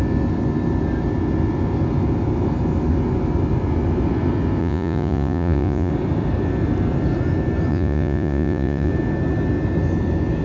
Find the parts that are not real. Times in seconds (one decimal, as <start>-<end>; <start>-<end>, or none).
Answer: 4.6-5.9; 7.7-8.9